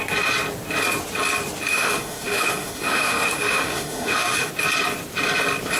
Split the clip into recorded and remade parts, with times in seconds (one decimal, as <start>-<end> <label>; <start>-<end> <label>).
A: 0.0-1.7 recorded; 1.7-4.5 remade; 4.5-5.8 recorded

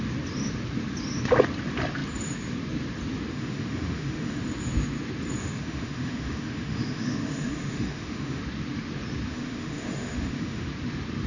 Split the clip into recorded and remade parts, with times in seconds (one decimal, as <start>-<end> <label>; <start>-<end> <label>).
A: 0.0-3.3 recorded; 3.3-4.4 remade; 4.4-5.4 recorded; 5.4-8.4 remade; 8.4-9.3 recorded; 9.3-10.7 remade; 10.7-11.3 recorded

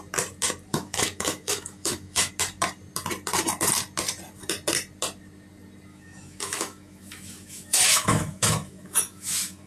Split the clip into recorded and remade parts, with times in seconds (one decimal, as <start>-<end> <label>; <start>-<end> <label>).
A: 0.0-0.7 recorded; 0.7-2.3 remade; 2.3-5.9 recorded; 5.9-9.7 remade

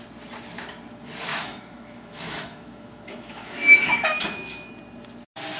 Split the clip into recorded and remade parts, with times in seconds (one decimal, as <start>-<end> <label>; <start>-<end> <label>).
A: 0.0-1.3 recorded; 1.3-4.7 remade; 4.7-5.6 recorded